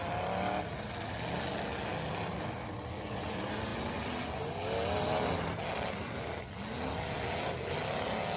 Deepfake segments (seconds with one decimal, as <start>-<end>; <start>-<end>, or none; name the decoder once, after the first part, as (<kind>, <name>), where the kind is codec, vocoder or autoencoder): none